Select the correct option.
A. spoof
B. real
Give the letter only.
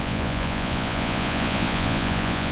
A